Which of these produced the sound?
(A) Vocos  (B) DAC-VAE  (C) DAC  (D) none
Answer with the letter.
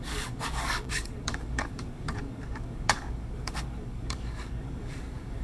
C